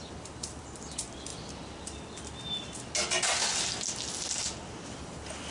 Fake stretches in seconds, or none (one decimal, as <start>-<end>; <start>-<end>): none